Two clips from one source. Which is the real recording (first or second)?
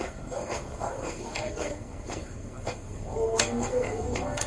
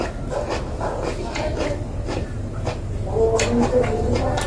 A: second